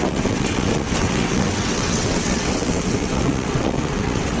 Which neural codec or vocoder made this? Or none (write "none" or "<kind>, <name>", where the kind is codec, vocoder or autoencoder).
vocoder, WaveNeXt